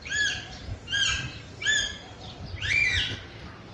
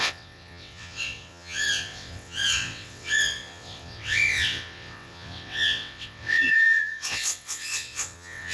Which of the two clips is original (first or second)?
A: first